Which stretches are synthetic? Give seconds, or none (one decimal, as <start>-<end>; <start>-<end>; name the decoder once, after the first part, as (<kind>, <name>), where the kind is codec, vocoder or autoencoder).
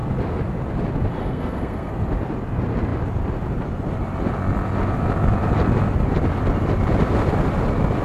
1.2-1.9 (codec, SNAC)